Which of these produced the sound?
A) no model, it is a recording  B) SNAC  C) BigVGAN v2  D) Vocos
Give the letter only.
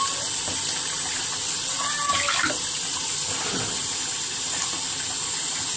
A